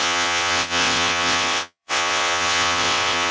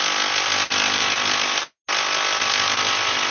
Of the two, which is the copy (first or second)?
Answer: first